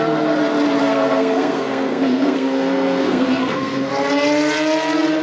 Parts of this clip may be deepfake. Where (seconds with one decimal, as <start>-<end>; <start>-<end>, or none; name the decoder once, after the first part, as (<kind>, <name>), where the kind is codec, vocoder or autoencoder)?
0.8-3.9 (codec, SNAC)